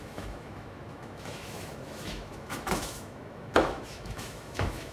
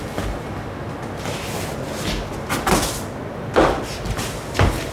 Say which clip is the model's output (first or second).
first